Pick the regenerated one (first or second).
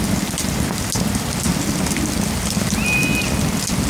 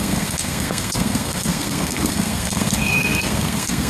second